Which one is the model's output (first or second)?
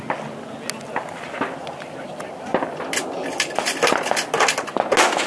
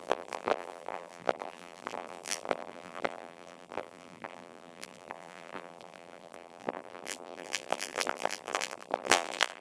second